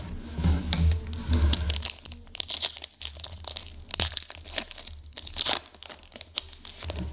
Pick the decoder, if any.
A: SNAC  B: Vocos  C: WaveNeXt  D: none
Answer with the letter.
D